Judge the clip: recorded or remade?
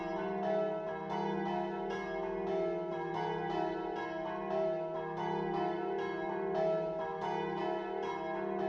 recorded